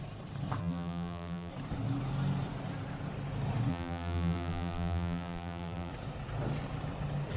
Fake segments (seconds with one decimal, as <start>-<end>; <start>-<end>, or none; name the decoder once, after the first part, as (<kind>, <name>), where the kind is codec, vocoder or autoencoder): 0.6-1.5 (vocoder, BigVGAN v2); 3.7-5.9